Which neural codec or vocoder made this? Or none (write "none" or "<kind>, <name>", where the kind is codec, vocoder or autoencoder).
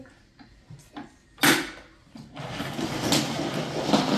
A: none